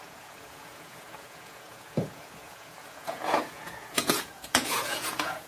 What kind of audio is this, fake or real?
fake